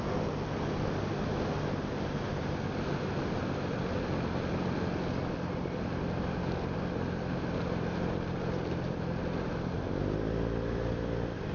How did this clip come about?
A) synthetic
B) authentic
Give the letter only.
B